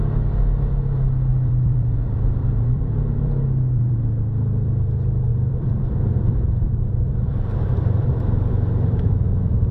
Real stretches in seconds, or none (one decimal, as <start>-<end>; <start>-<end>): 0.0-1.3; 3.9-5.3; 9.1-9.7